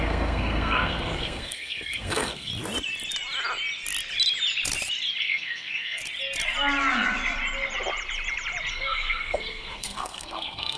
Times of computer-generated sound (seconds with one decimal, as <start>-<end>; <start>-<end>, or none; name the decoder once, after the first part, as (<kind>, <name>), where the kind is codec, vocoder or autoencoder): 0.0-2.5 (codec, SNAC); 5.2-6.0; 8.7-10.8